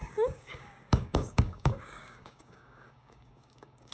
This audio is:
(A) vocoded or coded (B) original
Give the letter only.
A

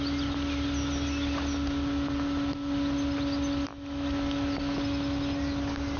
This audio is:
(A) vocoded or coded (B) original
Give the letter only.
B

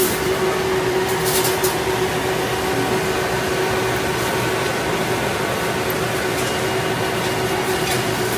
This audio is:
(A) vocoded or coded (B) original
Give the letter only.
B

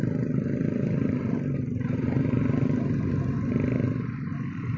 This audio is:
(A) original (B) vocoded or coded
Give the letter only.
A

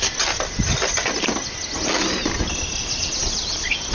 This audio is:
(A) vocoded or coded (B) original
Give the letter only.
B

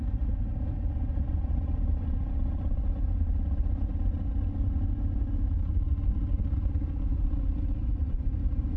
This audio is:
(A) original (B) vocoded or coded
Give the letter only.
B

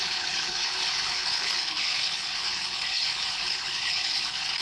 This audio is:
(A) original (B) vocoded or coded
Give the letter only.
B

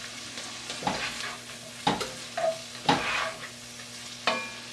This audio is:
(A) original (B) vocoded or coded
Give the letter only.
A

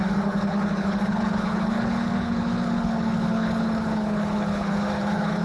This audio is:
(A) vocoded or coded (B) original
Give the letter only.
A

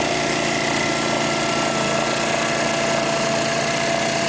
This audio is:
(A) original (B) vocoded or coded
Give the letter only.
A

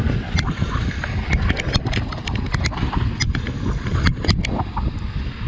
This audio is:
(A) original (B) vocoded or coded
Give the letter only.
A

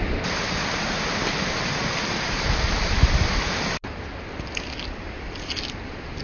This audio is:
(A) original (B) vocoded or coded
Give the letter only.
A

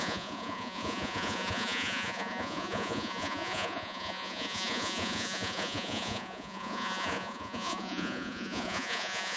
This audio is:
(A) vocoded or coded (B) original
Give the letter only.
A